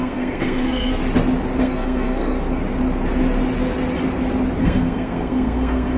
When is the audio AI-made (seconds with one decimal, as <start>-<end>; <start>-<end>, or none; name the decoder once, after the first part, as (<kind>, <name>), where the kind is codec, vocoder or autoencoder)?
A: 0.0-1.0 (codec, SNAC); 1.6-2.6; 4.6-6.0